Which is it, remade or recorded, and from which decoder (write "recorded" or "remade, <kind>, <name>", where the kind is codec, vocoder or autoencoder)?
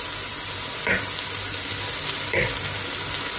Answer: recorded